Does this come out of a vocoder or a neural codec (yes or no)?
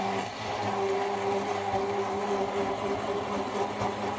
no